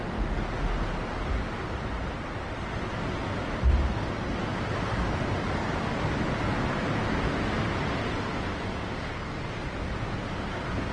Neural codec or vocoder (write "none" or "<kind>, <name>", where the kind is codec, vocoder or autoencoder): none